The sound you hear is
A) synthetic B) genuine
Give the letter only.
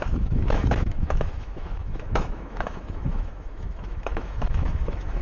A